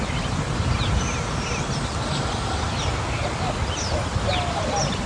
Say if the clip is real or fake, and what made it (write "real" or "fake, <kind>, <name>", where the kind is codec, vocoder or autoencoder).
real